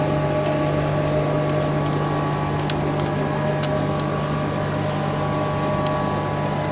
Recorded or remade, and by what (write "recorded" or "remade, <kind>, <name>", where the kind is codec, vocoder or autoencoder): recorded